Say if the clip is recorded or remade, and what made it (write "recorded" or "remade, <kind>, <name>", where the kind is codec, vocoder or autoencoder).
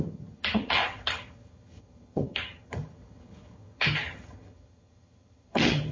remade, vocoder, HiFi-GAN